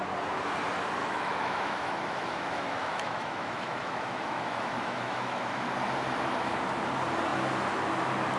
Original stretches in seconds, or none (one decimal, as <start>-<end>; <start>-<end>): 0.0-1.0; 5.7-8.4